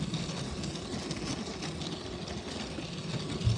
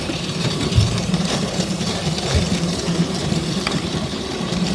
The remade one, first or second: second